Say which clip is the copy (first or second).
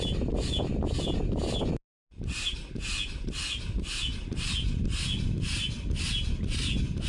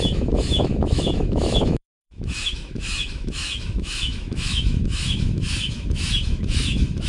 second